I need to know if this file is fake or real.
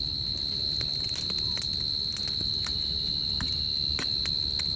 real